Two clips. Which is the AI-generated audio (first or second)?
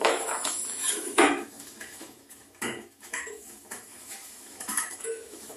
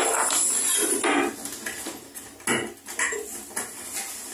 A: first